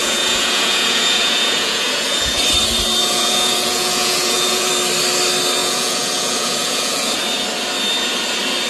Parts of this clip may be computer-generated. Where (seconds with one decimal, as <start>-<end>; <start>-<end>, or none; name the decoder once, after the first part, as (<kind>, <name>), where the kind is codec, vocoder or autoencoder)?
0.0-2.4 (vocoder, Vocos); 3.0-4.7; 5.6-7.2